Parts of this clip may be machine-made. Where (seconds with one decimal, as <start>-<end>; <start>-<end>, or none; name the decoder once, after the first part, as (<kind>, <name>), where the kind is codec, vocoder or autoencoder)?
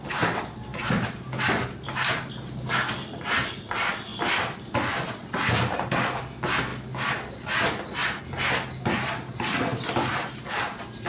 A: 0.7-3.3 (vocoder, BigVGAN v2); 4.1-5.9; 6.7-8.2; 9.7-10.2